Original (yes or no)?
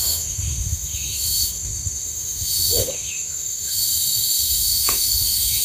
no